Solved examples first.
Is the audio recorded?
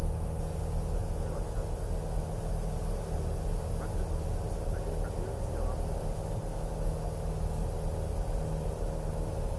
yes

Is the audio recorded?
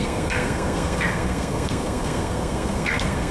no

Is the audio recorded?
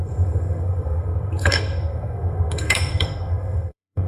no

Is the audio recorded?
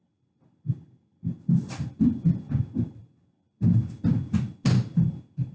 yes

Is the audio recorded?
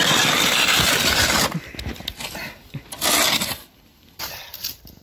yes